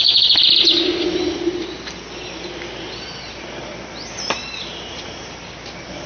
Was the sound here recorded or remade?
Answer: recorded